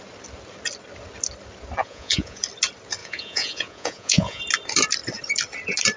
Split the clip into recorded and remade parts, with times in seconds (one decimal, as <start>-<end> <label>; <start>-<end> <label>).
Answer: 0.0-1.8 recorded; 1.8-2.4 remade; 2.4-3.0 recorded; 3.0-4.4 remade; 4.4-6.0 recorded